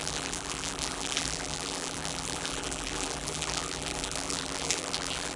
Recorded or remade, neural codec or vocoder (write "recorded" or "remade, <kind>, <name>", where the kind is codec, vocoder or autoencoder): remade, vocoder, BigVGAN v2